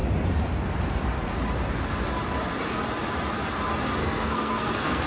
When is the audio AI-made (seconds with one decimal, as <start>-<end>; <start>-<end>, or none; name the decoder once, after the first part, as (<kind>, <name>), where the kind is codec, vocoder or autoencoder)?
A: 4.0-5.1 (codec, SNAC)